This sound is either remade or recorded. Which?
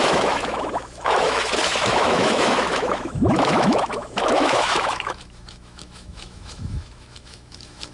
remade